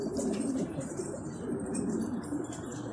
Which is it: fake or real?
fake